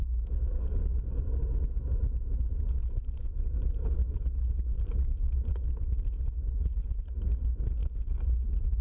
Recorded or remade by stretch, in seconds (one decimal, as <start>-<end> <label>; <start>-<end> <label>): 0.0-8.8 recorded